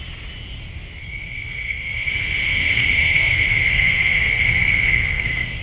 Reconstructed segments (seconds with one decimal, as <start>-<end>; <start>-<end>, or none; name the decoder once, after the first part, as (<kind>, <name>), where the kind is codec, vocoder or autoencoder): 1.0-2.1 (codec, SNAC); 2.5-5.6